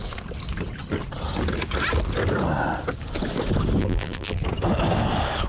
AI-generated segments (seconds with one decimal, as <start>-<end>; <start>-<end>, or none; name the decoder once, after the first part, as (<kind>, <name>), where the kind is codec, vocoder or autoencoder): 3.8-4.4 (vocoder, BigVGAN v2)